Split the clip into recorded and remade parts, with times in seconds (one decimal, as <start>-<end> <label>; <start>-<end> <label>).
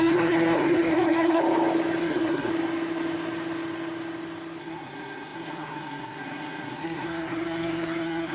0.0-1.4 remade; 1.4-2.0 recorded; 2.0-2.5 remade; 2.5-4.6 recorded; 4.6-8.3 remade